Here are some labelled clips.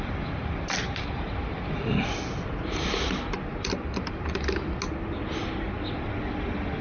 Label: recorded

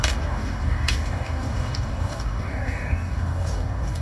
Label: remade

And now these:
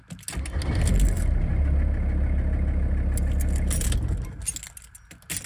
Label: recorded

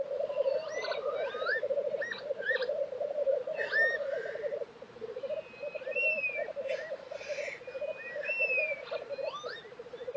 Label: recorded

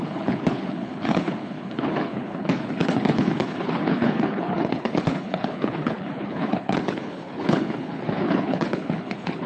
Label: remade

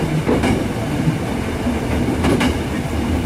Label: recorded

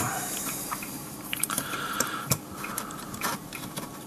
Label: remade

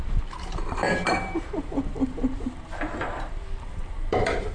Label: remade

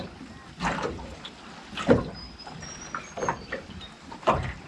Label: recorded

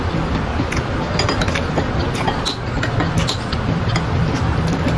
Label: recorded